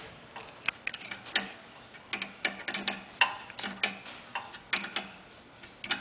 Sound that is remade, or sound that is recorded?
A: recorded